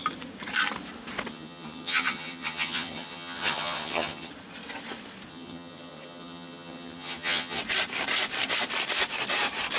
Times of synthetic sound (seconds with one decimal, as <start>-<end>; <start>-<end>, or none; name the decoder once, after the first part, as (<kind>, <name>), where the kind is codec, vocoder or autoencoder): 1.3-4.3 (vocoder, HiFi-GAN); 5.3-7.6

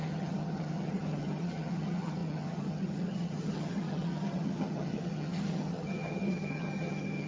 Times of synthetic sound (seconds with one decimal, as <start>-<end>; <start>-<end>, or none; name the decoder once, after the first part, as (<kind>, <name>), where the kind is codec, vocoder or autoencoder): 0.0-7.3 (vocoder, HiFi-GAN)

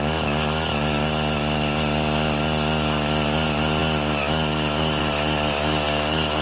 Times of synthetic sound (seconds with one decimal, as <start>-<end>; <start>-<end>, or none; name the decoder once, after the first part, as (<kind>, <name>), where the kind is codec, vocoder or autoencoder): none

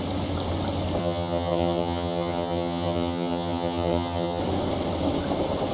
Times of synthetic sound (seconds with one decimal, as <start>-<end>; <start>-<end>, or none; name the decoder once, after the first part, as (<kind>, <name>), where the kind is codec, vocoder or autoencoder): 1.0-4.4 (vocoder, HiFi-GAN)

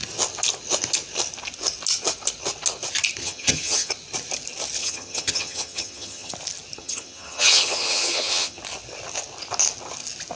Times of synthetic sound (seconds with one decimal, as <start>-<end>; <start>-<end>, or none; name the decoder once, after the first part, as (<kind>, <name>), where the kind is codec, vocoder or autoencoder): 3.2-3.9 (vocoder, HiFi-GAN); 4.8-6.3; 6.8-8.6